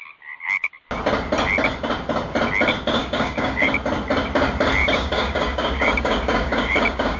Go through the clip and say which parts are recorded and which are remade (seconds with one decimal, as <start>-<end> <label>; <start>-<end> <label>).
0.0-3.0 recorded; 3.0-3.7 remade; 3.7-4.8 recorded; 4.8-7.2 remade